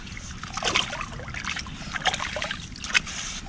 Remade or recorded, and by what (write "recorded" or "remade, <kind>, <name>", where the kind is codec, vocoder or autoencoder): recorded